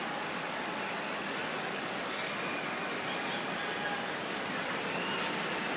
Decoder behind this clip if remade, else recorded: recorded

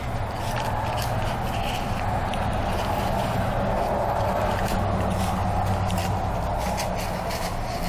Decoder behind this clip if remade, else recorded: recorded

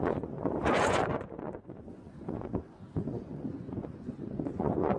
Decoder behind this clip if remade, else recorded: remade, vocoder, Vocos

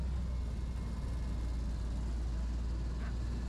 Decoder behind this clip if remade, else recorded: recorded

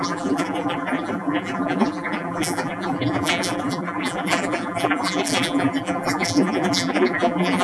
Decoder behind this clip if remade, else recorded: remade, vocoder, BigVGAN v2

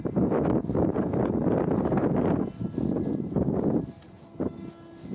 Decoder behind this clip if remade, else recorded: recorded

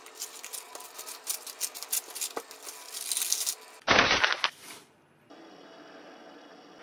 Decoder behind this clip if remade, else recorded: recorded